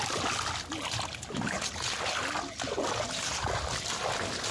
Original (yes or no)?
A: yes